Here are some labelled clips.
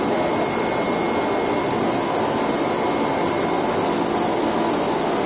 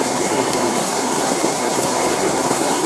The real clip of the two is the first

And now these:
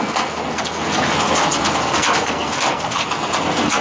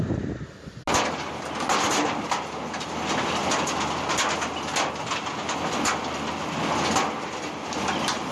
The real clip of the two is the second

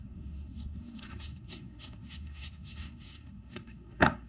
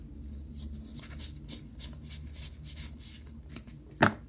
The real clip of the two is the second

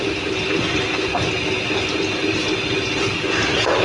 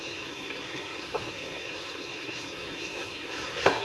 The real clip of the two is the first